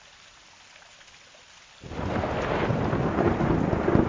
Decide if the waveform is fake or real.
real